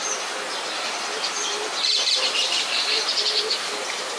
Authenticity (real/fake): fake